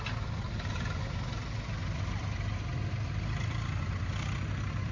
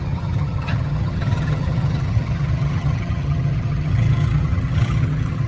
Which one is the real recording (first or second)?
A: first